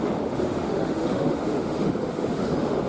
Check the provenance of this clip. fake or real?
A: fake